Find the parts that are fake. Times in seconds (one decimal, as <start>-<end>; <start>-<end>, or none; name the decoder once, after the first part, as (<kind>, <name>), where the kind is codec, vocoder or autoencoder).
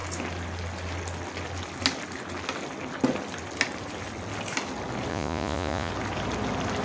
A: 5.1-5.9 (vocoder, Vocos)